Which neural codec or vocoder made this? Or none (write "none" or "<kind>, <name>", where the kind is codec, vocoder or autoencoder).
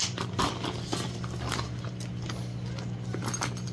none